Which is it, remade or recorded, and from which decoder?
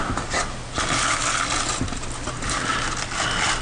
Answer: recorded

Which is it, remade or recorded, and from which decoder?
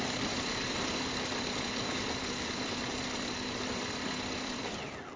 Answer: remade, vocoder, BigVGAN v2